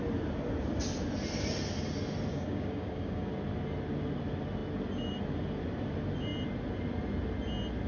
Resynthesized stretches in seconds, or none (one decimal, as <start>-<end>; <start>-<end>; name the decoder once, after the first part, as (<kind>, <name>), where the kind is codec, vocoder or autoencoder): 2.3-3.3 (codec, DAC)